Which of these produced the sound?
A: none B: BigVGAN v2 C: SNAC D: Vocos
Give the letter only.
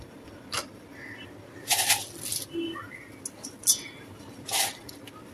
A